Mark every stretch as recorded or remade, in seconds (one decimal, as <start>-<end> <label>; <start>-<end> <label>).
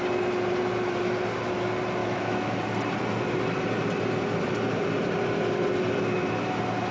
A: 0.0-2.0 recorded; 2.0-2.6 remade; 2.6-6.9 recorded